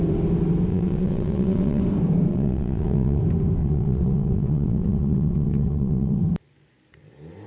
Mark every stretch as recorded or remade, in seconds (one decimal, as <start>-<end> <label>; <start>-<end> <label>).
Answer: 0.0-0.7 recorded; 0.7-1.8 remade; 1.8-2.3 recorded; 2.3-3.2 remade; 3.2-3.6 recorded; 3.6-6.2 remade; 6.2-7.5 recorded